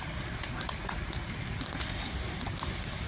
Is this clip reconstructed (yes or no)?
no